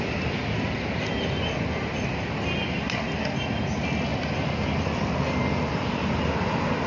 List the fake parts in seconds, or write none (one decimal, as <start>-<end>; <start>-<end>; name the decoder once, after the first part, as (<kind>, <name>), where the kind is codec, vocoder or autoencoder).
none